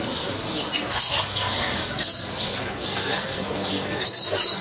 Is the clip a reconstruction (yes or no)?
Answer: yes